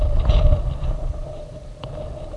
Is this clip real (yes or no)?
no